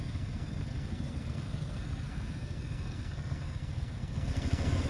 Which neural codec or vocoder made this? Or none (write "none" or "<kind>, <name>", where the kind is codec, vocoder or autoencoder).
codec, SNAC